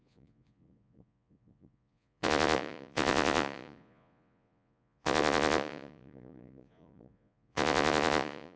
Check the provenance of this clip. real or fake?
fake